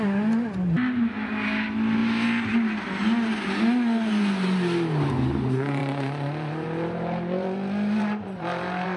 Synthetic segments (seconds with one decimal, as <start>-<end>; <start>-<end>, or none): 5.8-9.0